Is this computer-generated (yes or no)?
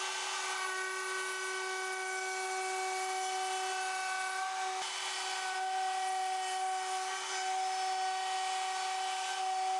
no